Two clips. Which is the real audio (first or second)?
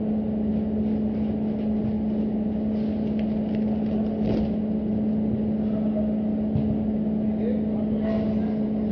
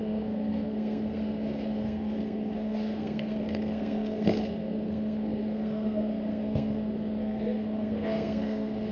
first